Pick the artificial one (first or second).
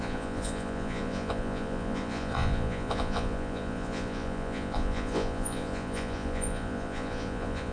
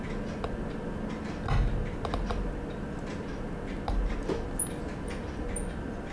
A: first